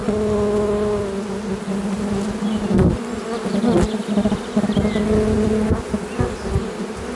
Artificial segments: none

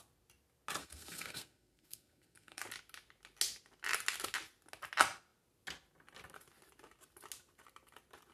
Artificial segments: 0.8-2.6 (codec, SNAC)

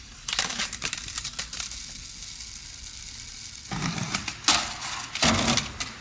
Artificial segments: none

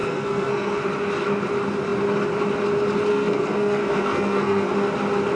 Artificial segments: 0.0-0.8 (codec, SNAC); 3.1-4.7

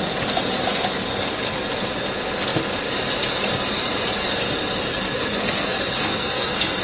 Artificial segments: 4.9-6.8 (codec, SNAC)

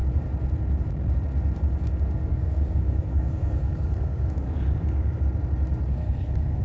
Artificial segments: 2.3-5.2 (codec, SNAC); 5.9-6.6